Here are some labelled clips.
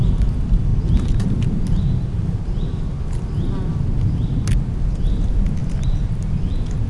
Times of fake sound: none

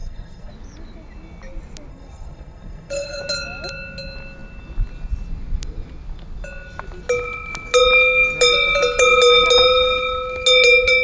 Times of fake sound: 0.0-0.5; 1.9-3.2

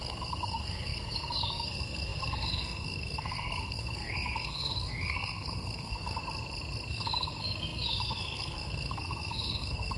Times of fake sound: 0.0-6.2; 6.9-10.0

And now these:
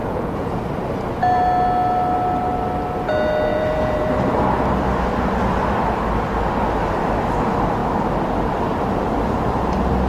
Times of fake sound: 0.0-0.6; 3.5-4.1

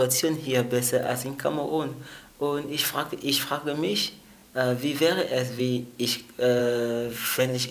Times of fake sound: 6.6-7.7